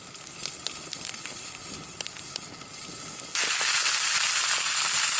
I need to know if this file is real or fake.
real